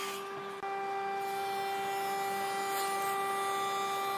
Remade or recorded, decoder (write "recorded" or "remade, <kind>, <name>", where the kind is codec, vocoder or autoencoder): recorded